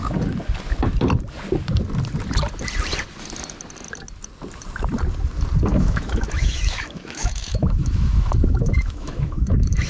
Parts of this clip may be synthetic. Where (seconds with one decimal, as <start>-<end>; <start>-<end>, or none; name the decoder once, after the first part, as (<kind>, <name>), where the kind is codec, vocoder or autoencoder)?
5.7-9.9 (autoencoder, DAC-VAE)